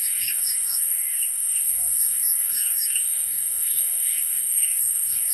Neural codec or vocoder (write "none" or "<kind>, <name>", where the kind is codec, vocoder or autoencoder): codec, DAC